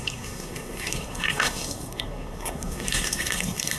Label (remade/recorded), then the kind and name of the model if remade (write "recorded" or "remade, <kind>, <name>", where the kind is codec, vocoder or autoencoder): remade, codec, SNAC